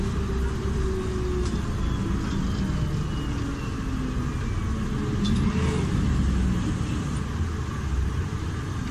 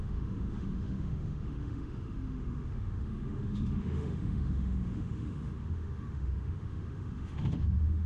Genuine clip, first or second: first